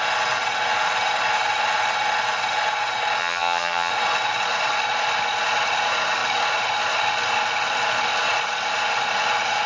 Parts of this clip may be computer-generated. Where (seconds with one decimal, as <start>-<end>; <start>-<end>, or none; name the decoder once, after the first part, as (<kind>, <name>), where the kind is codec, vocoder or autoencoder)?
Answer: 3.2-3.9 (vocoder, HiFi-GAN)